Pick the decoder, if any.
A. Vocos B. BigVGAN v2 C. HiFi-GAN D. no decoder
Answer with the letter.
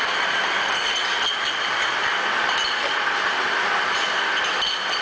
D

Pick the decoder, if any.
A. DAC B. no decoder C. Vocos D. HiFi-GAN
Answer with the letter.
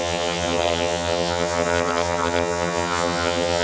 D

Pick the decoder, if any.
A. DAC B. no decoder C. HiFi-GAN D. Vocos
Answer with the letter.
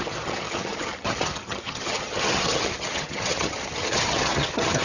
C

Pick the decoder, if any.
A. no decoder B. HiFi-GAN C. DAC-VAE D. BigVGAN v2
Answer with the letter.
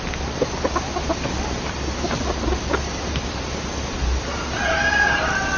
A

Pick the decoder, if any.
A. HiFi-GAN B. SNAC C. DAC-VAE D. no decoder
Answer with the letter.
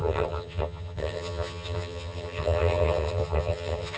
A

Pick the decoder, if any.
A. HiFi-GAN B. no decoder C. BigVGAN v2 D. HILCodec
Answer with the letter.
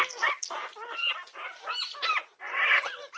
B